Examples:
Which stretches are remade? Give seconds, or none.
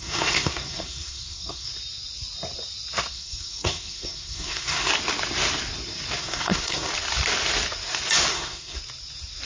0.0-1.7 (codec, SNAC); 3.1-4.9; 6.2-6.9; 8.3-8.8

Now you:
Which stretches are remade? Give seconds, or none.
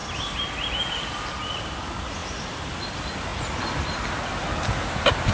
2.2-2.9 (vocoder, BigVGAN v2); 3.3-4.2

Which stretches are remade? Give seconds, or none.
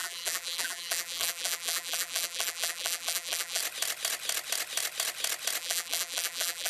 0.0-3.6 (vocoder, BigVGAN v2); 5.6-6.7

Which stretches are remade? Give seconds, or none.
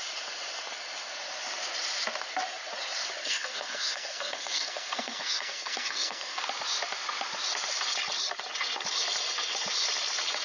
3.2-6.4 (codec, SNAC)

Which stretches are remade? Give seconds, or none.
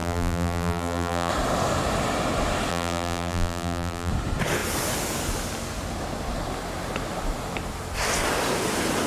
0.0-1.3 (vocoder, BigVGAN v2); 2.7-4.1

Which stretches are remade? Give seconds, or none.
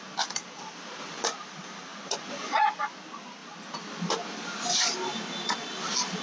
1.9-2.7 (vocoder, Vocos)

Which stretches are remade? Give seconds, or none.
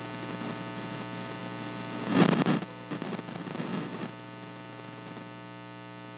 none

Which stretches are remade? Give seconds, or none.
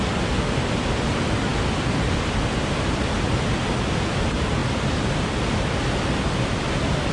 none